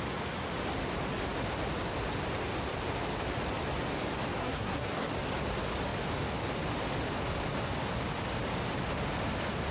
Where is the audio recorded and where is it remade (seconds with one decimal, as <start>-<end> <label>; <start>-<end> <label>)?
0.0-4.4 recorded; 4.4-5.1 remade; 5.1-9.7 recorded